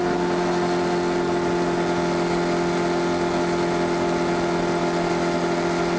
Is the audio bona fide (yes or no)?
yes